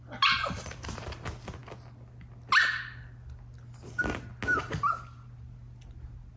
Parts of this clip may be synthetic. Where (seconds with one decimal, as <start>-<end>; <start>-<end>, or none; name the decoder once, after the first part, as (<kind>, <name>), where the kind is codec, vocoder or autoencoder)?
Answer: none